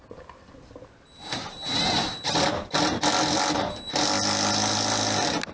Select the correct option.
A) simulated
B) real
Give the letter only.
B